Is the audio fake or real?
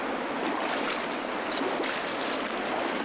real